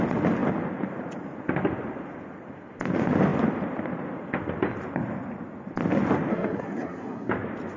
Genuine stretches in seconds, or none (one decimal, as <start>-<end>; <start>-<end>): 0.0-6.3; 7.3-7.8